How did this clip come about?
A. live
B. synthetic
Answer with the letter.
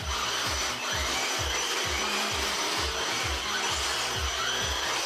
A